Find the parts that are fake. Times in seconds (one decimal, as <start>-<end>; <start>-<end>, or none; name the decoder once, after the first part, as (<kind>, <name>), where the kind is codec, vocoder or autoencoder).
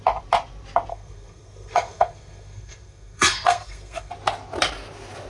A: 0.9-4.1 (codec, SNAC)